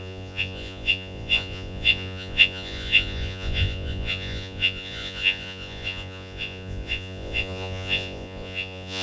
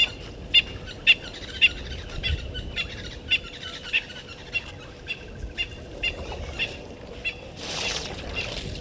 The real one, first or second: second